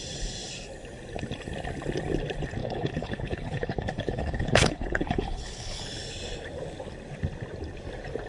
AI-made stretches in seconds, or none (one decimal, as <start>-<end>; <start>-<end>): 2.6-5.8